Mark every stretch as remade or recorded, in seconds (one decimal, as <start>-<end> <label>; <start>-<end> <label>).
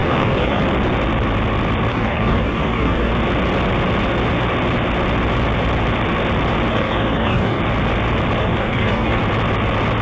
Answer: 0.0-0.6 remade; 0.6-1.9 recorded; 1.9-3.1 remade; 3.1-6.7 recorded; 6.7-7.6 remade; 7.6-8.4 recorded; 8.4-9.2 remade; 9.2-10.0 recorded